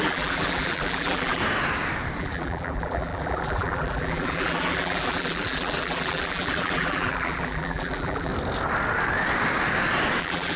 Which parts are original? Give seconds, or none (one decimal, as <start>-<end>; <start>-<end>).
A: 1.4-2.2; 8.3-10.2